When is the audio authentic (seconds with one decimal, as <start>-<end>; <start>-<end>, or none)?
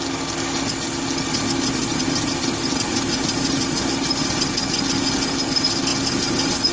0.0-1.9; 3.7-6.7